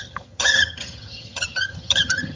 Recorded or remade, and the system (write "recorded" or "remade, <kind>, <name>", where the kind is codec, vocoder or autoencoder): remade, vocoder, HiFi-GAN